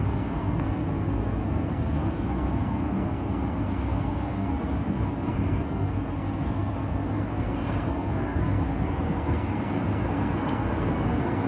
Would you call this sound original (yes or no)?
no